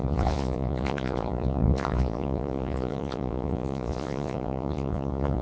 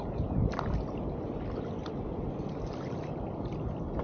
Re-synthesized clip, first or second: first